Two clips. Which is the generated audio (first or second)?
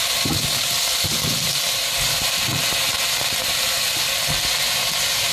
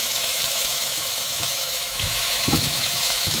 second